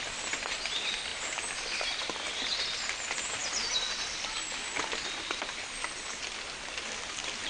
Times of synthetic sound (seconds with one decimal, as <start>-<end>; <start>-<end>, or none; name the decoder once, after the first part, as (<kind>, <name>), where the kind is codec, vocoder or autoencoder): none